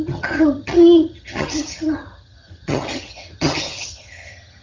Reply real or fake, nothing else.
fake